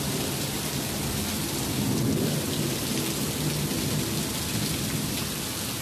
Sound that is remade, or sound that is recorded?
recorded